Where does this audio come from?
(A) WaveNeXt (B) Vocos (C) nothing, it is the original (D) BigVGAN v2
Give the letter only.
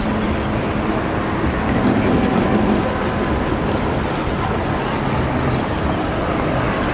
C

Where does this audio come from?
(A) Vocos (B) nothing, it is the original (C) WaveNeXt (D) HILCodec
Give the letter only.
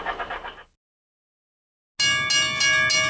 B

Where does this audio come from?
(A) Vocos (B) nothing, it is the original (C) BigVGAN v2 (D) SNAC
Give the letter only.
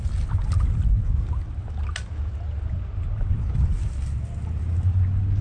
B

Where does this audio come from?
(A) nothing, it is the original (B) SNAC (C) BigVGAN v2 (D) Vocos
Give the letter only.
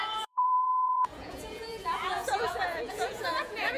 D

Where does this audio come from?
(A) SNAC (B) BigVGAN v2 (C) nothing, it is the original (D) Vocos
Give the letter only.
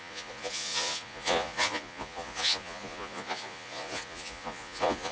D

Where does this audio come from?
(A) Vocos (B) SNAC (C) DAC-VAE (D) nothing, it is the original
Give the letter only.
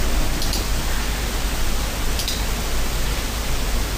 D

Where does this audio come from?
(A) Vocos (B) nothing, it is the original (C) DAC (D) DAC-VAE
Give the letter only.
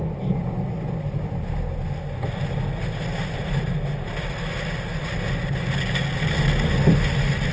B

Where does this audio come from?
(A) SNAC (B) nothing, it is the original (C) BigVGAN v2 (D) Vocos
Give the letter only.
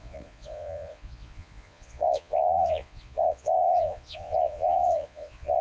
D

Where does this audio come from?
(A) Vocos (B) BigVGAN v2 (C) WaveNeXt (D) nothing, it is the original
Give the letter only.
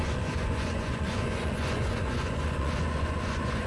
A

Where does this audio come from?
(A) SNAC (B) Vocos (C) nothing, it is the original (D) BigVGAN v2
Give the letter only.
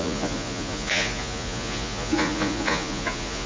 B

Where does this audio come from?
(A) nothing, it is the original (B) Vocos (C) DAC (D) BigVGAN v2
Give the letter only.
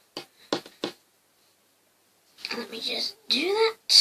A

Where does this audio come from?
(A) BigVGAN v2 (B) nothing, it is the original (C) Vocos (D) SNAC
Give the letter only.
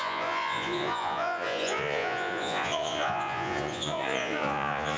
C